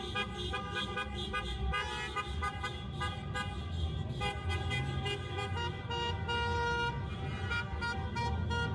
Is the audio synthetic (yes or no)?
no